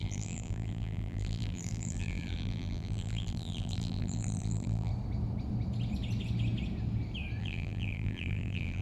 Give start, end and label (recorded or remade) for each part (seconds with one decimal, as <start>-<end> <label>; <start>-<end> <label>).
0.0-4.9 remade; 4.9-7.4 recorded; 7.4-8.8 remade